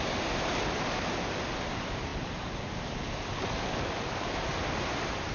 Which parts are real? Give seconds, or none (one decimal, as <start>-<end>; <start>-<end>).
0.0-5.3